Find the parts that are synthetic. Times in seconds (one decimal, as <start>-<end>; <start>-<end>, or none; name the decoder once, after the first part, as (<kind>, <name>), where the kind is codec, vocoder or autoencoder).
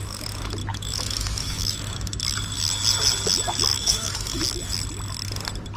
0.6-2.2 (autoencoder, DAC-VAE); 3.7-4.4